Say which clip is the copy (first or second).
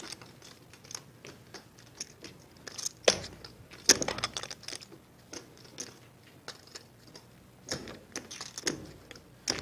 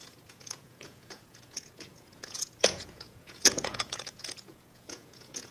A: second